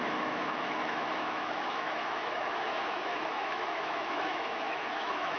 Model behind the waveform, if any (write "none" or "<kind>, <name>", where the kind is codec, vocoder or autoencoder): autoencoder, DAC-VAE